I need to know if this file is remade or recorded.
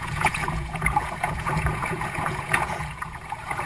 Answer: remade